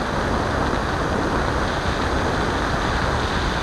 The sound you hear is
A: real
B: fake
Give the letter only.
A